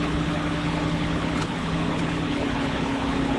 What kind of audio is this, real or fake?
fake